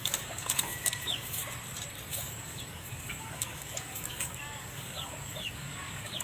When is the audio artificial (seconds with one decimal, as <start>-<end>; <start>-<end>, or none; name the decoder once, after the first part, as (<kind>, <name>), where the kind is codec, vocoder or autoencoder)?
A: 0.0-1.4 (codec, DAC); 2.1-6.2